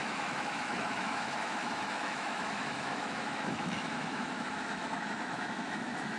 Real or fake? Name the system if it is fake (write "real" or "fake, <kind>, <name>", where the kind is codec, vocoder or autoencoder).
fake, autoencoder, DAC-VAE